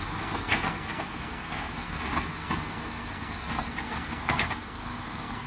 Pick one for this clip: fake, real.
fake